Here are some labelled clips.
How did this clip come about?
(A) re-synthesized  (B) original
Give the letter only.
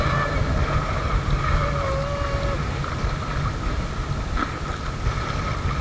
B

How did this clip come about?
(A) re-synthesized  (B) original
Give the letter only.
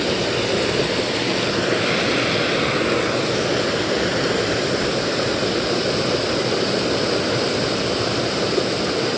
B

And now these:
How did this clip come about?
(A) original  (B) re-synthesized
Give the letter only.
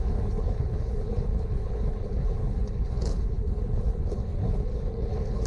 B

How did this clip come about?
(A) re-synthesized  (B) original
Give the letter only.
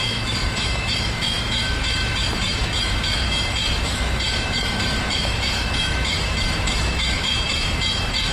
A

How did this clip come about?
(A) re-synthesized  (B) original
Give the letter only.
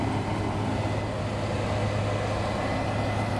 B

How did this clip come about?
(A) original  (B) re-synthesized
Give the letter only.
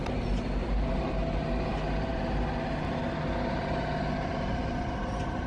B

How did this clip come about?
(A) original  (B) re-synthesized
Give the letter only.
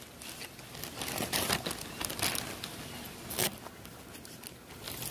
A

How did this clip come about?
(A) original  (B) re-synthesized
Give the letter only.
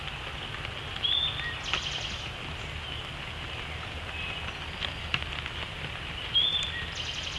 A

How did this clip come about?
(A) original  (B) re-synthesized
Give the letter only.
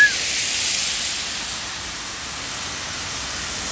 A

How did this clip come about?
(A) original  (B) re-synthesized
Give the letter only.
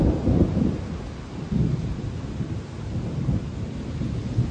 A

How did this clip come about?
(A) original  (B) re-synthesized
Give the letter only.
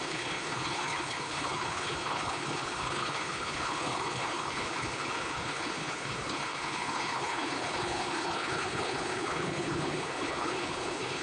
B